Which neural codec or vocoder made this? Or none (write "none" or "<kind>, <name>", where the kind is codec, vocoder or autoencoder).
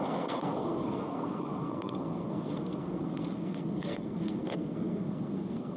codec, SNAC